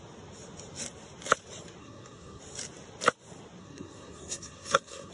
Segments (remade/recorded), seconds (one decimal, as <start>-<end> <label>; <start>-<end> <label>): 0.0-1.8 recorded; 1.8-2.4 remade; 2.4-3.6 recorded; 3.6-5.1 remade